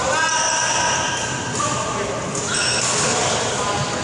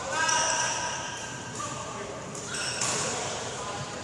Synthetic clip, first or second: second